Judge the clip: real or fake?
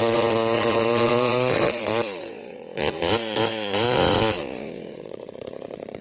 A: fake